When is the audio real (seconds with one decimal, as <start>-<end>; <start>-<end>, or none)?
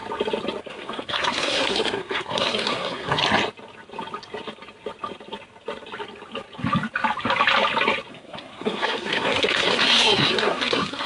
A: 0.0-0.6; 3.2-8.1